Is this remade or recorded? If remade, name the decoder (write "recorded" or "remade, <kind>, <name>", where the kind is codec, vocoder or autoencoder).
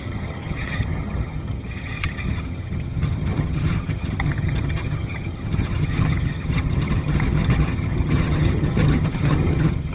remade, vocoder, HiFi-GAN